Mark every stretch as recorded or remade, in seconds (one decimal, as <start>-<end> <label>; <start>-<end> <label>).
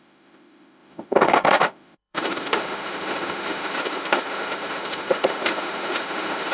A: 0.0-6.5 remade